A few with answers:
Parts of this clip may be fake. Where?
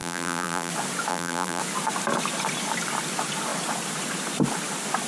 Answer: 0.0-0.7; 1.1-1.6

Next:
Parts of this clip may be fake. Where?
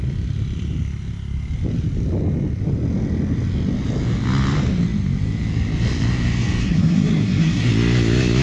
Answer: 6.6-7.7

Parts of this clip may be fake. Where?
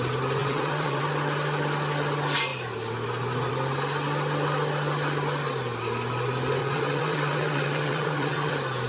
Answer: 0.4-1.0; 6.6-8.5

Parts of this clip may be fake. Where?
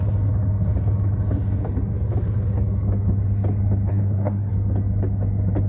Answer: 3.9-4.5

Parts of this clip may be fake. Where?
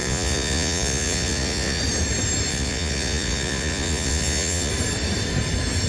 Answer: 0.0-1.8; 2.5-4.7